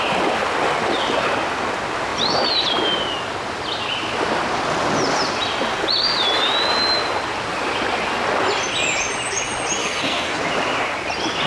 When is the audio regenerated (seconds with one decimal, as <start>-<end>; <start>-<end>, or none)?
9.8-10.4